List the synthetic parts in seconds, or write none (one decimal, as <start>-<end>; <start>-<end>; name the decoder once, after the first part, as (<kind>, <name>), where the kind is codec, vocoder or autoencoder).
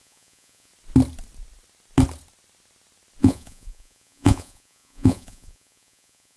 0.0-0.7 (vocoder, Vocos); 3.2-6.4